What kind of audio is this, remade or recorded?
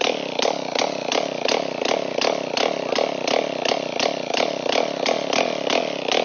recorded